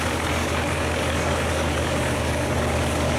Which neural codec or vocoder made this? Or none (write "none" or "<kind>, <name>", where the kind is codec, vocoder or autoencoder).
codec, DAC